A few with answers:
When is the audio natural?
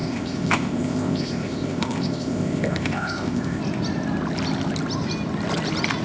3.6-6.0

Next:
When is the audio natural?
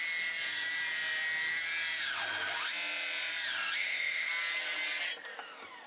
0.0-3.8; 4.3-5.9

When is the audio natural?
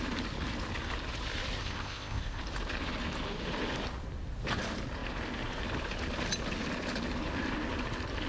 0.0-1.6; 2.4-8.3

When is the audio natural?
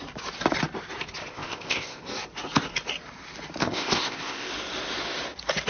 0.0-1.3; 2.0-3.6; 4.5-5.7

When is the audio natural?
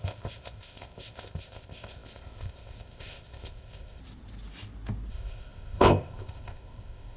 4.0-5.1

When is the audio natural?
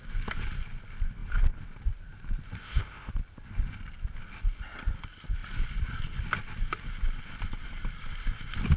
0.0-2.6; 3.1-8.8